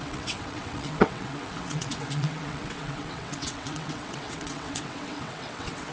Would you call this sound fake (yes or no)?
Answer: yes